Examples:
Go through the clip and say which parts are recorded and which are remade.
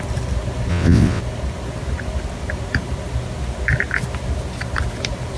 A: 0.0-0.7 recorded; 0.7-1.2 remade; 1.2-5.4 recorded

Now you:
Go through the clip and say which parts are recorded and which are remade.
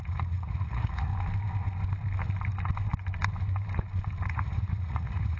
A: 0.0-1.1 remade; 1.1-4.3 recorded; 4.3-5.4 remade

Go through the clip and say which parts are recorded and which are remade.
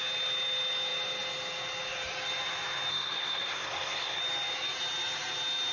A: 0.0-2.9 recorded; 2.9-4.2 remade; 4.2-5.7 recorded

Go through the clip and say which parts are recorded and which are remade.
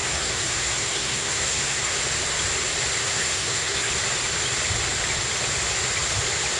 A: 0.0-2.0 remade; 2.0-3.0 recorded; 3.0-3.9 remade; 3.9-6.6 recorded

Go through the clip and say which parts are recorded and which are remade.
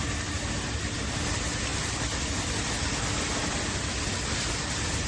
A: 0.0-5.1 recorded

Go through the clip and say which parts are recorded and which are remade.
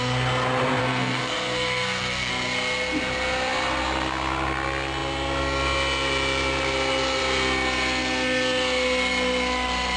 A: 0.0-0.8 recorded; 0.8-2.3 remade; 2.3-10.0 recorded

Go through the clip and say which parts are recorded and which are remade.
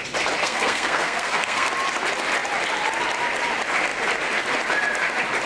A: 0.0-0.4 recorded; 0.4-1.7 remade; 1.7-5.5 recorded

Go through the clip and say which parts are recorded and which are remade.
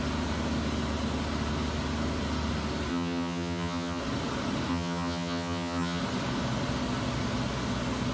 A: 0.0-2.9 recorded; 2.9-4.0 remade; 4.0-4.7 recorded; 4.7-6.0 remade; 6.0-8.1 recorded